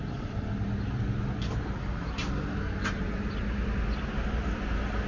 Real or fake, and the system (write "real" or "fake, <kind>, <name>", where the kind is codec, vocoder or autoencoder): real